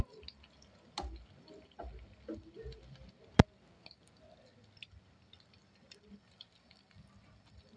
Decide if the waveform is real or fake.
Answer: real